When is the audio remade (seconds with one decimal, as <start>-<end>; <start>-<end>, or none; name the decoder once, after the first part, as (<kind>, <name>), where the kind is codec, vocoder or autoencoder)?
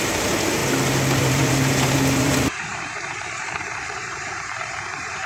0.0-0.6 (vocoder, BigVGAN v2); 1.2-5.3